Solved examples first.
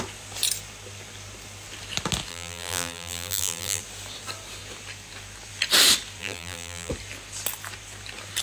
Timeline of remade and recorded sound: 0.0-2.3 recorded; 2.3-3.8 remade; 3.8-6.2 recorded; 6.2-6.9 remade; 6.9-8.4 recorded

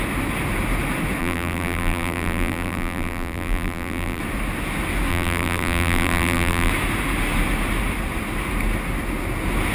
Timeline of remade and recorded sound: 0.0-1.2 recorded; 1.2-4.2 remade; 4.2-5.1 recorded; 5.1-6.7 remade; 6.7-9.7 recorded

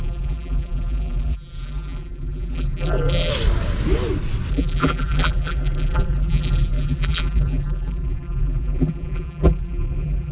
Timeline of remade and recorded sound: 0.0-3.3 remade; 3.3-4.5 recorded; 4.5-10.3 remade